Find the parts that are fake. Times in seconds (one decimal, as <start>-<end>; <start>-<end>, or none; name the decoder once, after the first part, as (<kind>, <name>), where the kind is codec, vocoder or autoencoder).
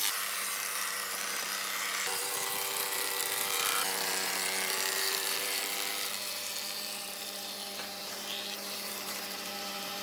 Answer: 0.0-10.0 (vocoder, BigVGAN v2)